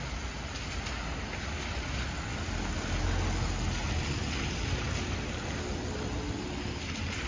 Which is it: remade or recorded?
recorded